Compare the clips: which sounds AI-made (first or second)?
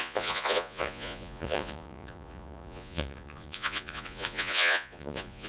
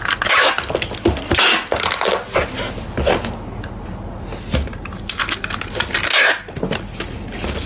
first